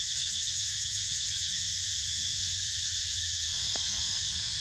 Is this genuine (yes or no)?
no